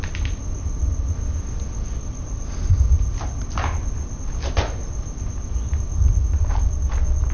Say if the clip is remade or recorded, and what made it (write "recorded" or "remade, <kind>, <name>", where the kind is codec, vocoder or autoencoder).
recorded